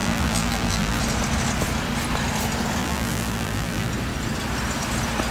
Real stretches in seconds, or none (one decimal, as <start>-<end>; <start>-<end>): 1.0-2.8; 3.9-5.3